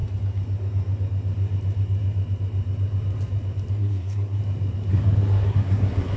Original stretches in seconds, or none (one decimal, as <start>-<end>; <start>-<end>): 0.0-3.7; 4.4-4.9